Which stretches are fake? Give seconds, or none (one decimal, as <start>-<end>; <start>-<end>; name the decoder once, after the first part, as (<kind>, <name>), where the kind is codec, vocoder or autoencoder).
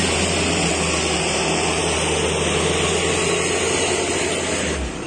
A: 0.0-0.7 (vocoder, BigVGAN v2); 1.3-1.8